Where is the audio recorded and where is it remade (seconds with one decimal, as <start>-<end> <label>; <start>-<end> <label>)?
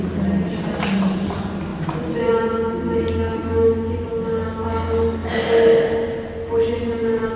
0.0-7.4 recorded